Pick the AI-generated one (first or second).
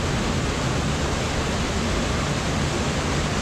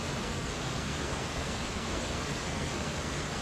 second